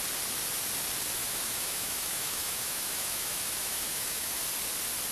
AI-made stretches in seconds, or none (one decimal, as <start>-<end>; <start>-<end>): 1.2-4.3

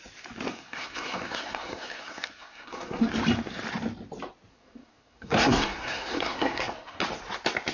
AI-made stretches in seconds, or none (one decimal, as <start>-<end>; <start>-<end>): 0.5-3.1; 4.5-7.0

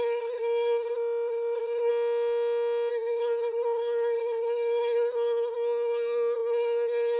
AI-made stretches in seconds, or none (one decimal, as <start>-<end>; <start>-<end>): 0.0-1.9; 2.9-7.2

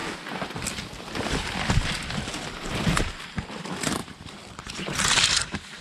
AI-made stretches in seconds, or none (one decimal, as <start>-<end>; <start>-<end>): 4.0-5.8